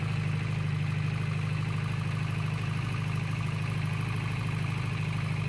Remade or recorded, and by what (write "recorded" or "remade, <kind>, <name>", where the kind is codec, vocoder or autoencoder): recorded